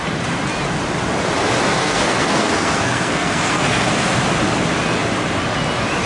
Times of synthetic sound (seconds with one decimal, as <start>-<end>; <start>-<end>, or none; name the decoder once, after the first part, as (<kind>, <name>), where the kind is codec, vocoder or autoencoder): 1.7-3.9 (codec, SNAC)